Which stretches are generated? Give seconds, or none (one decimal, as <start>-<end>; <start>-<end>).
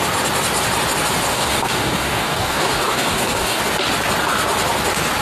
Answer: 1.3-3.6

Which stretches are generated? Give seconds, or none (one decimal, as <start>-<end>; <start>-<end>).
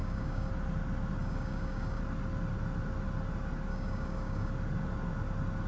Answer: 0.0-0.5; 1.2-2.0; 3.7-4.5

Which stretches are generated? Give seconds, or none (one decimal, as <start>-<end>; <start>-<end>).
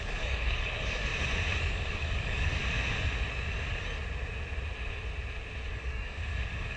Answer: 0.0-1.1; 1.7-2.6; 5.7-6.8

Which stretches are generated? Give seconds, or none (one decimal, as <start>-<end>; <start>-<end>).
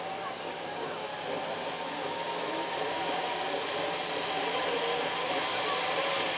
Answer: 0.0-1.1; 1.7-2.4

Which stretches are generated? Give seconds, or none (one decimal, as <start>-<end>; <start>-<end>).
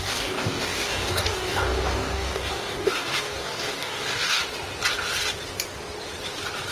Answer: 0.0-4.4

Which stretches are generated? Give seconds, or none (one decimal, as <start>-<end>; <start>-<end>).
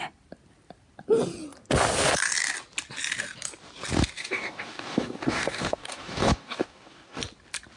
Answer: 4.2-7.2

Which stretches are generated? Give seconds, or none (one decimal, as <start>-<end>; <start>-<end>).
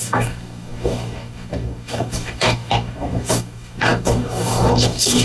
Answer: 0.0-5.2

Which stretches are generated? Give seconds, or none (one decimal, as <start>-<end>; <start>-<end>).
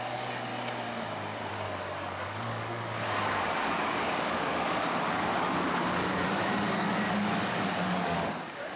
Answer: 0.0-0.5; 1.5-8.8